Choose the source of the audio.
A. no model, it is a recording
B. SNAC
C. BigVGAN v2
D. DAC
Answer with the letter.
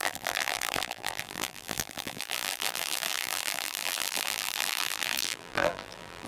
C